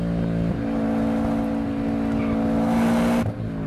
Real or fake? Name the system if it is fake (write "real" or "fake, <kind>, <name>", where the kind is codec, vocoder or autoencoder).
real